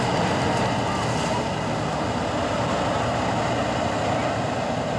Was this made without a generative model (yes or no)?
yes